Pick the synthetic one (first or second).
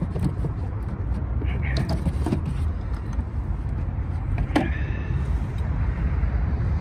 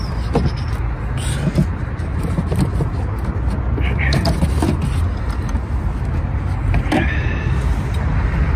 first